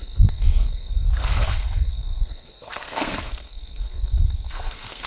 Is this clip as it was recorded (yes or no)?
no